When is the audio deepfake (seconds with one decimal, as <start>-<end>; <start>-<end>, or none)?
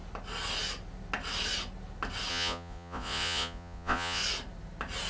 2.3-4.2